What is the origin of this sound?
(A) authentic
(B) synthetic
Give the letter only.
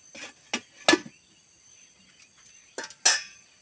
A